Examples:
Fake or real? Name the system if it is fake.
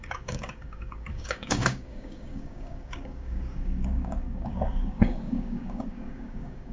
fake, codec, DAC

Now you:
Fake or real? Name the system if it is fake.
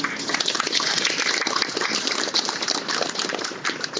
real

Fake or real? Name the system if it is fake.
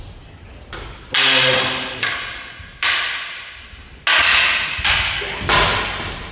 real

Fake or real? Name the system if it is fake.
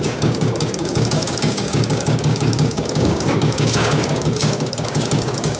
fake, codec, DAC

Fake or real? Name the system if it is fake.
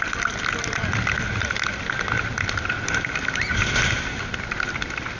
real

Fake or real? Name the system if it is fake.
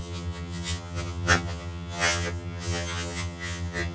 fake, vocoder, HiFi-GAN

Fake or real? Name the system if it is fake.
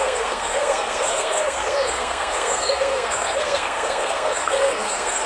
fake, codec, SNAC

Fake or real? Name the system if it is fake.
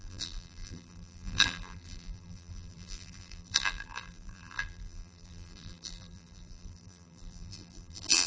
fake, vocoder, BigVGAN v2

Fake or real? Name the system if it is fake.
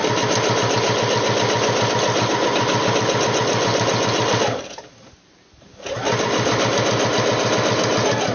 real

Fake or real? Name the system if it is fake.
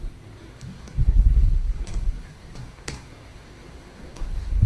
fake, codec, SNAC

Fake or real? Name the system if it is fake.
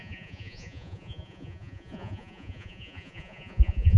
fake, vocoder, Vocos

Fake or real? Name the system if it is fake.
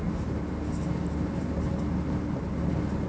real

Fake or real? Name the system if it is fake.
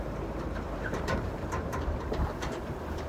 fake, vocoder, BigVGAN v2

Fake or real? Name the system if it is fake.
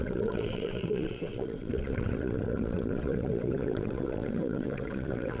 fake, vocoder, WaveNeXt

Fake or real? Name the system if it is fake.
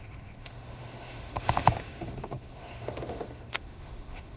fake, autoencoder, DAC-VAE